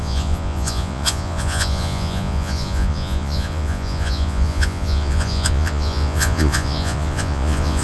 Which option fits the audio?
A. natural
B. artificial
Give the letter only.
B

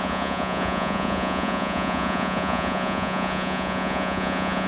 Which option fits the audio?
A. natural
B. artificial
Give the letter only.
B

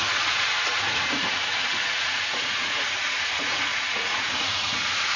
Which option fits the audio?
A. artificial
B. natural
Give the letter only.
A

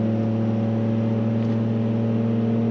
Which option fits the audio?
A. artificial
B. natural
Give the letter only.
B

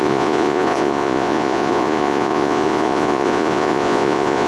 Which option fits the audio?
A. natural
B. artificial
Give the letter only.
B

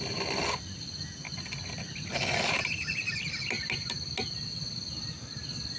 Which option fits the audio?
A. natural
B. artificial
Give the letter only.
A